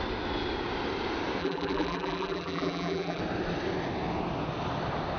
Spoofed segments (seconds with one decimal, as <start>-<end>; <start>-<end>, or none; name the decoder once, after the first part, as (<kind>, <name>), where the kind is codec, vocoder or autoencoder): 1.4-3.2 (vocoder, BigVGAN v2)